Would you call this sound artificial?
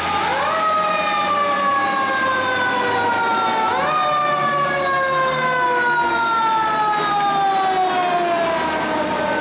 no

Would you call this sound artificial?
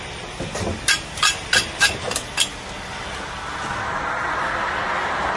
no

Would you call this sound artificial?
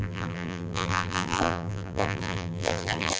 yes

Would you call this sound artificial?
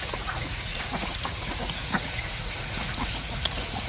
yes